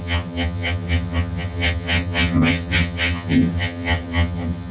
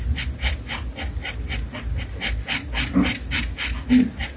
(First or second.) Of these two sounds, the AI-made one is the first